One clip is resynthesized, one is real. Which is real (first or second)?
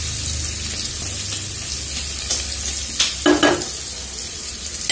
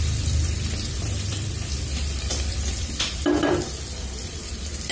first